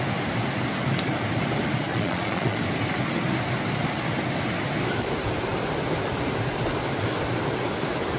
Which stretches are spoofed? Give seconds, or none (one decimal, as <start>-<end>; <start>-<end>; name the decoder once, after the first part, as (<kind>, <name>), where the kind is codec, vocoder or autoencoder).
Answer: 1.9-2.6 (vocoder, Vocos)